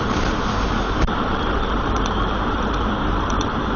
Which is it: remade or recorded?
remade